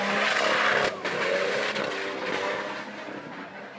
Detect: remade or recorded recorded